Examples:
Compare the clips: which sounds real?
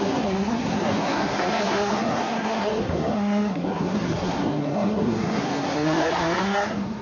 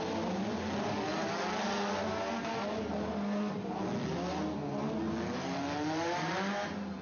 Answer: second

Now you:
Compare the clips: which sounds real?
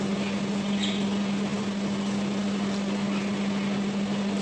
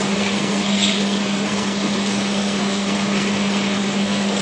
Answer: first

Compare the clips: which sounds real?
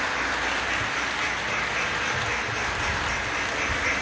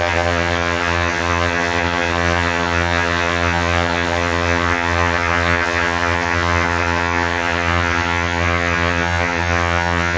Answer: first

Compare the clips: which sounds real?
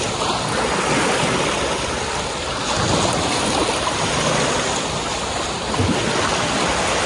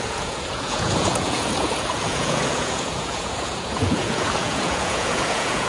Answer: first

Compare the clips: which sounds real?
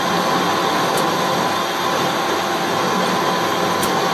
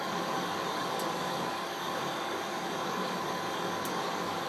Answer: first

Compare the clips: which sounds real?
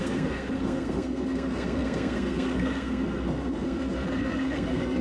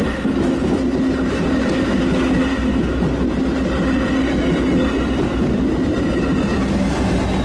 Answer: second